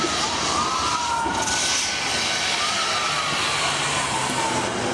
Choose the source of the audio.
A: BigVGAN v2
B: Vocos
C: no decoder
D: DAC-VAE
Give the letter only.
C